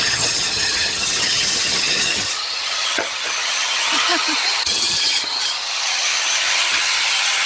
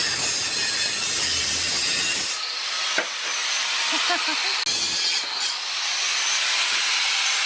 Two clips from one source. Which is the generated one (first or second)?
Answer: first